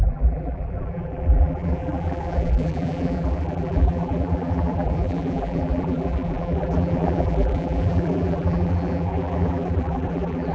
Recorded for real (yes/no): no